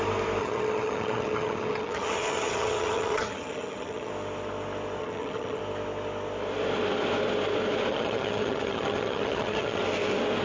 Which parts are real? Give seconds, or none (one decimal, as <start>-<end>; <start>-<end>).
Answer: 0.0-0.4; 4.1-5.0; 5.6-7.9; 9.8-10.4